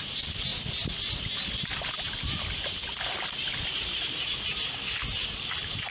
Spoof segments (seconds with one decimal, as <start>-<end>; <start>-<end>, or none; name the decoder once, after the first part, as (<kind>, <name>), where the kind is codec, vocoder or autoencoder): none